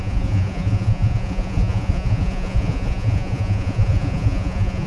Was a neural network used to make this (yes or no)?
yes